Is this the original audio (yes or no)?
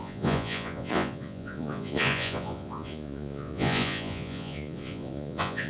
no